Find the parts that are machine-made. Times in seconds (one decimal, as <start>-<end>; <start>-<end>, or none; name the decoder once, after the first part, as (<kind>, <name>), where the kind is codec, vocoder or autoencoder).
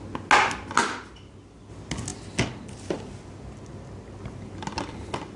none